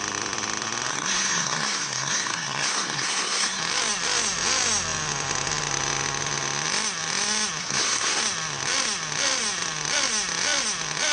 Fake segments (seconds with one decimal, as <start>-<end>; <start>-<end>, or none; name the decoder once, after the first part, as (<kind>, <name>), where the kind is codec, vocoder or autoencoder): 0.9-3.6 (codec, SNAC); 7.6-8.2